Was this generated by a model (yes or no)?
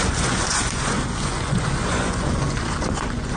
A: yes